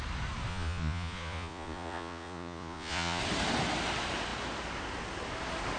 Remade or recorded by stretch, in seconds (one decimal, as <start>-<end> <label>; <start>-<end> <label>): 0.0-0.5 recorded; 0.5-3.2 remade; 3.2-5.8 recorded